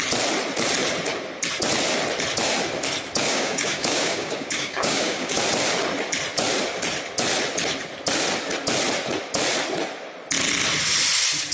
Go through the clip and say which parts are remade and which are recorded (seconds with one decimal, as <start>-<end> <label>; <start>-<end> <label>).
0.0-3.3 recorded; 3.3-5.4 remade; 5.4-11.5 recorded